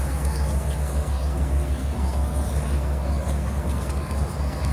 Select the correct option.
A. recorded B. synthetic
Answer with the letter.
B